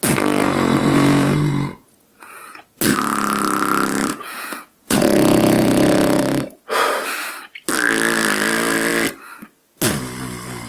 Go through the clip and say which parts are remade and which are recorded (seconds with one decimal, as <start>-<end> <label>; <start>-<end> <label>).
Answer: 0.0-0.4 recorded; 0.4-2.6 remade; 2.6-4.1 recorded; 4.1-6.2 remade; 6.2-10.7 recorded